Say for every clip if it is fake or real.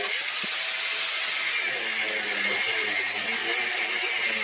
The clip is real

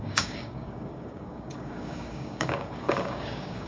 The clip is fake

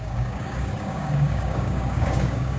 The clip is fake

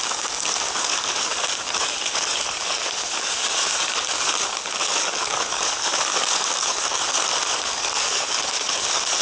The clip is fake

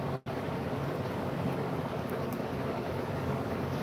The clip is fake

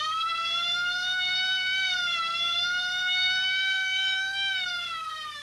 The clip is fake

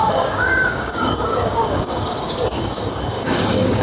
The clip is fake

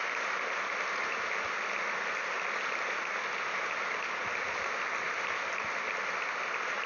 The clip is real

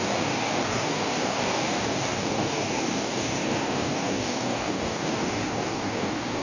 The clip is fake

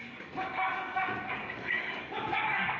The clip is fake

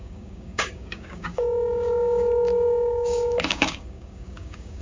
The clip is fake